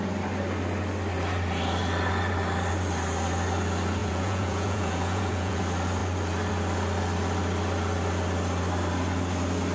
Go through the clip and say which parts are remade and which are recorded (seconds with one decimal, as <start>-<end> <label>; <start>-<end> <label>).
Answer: 0.0-4.0 recorded; 4.0-5.6 remade; 5.6-9.7 recorded